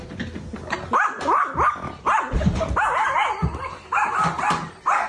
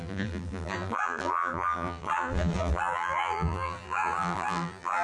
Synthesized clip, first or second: second